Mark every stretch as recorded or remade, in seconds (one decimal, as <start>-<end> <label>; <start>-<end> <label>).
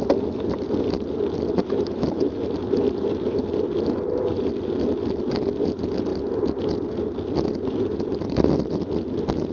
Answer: 0.0-1.6 recorded; 1.6-2.4 remade; 2.4-9.5 recorded